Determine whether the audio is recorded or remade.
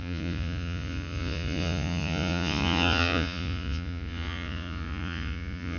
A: remade